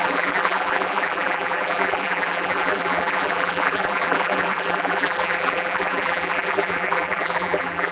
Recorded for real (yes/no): no